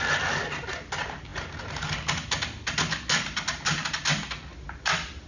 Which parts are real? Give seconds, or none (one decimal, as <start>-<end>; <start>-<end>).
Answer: 0.0-5.3